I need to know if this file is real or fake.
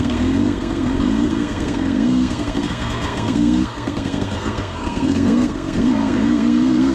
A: fake